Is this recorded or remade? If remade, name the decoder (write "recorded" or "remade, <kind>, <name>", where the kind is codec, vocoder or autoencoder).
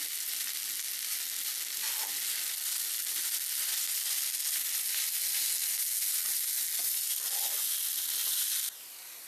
recorded